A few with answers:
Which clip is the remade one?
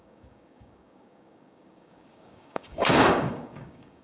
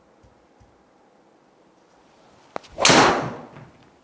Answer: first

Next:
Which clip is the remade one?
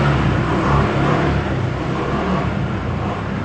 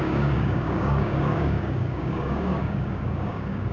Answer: second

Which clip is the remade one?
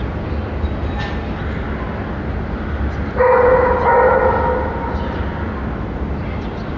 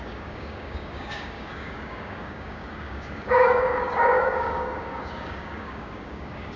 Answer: second